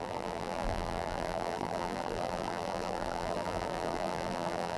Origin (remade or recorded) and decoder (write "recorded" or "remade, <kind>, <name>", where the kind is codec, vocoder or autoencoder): remade, vocoder, BigVGAN v2